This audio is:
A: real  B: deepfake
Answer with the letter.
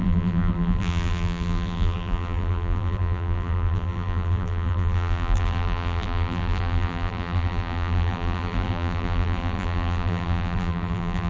B